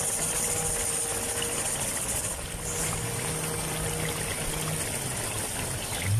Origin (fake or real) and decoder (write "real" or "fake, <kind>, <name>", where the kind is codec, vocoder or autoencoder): real